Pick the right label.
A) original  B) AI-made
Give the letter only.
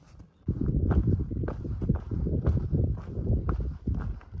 A